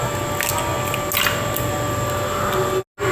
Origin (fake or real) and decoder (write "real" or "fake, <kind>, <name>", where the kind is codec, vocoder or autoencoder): real